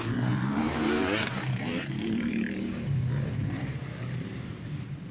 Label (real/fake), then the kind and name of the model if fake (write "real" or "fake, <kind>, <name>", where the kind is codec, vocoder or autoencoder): fake, vocoder, BigVGAN v2